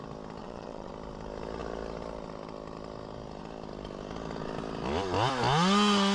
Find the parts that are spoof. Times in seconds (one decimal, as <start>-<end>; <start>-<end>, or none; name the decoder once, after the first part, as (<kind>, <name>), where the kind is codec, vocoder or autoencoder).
0.4-0.9 (vocoder, Vocos)